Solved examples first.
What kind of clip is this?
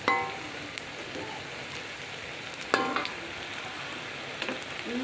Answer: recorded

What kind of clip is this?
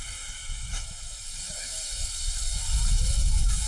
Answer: remade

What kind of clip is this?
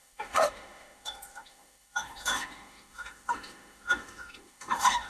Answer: remade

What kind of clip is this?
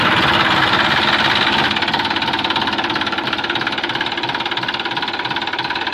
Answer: recorded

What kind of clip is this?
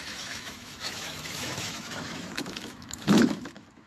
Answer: remade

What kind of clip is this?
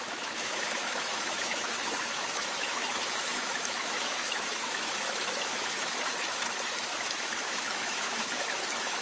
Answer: remade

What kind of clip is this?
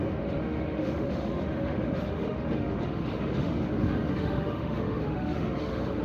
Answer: remade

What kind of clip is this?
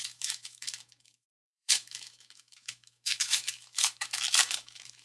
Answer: remade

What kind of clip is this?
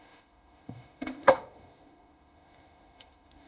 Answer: remade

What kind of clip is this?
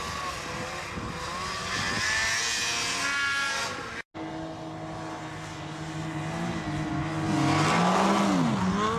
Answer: recorded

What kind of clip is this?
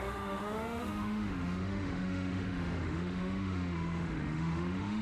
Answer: remade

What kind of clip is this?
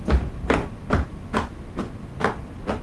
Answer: recorded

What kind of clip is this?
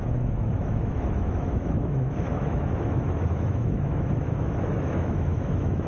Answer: remade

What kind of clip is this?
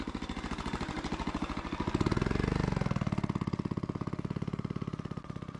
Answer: recorded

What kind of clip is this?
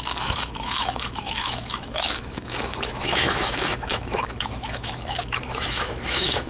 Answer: remade